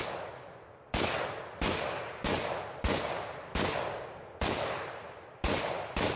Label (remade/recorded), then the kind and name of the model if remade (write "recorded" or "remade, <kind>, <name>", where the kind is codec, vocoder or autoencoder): recorded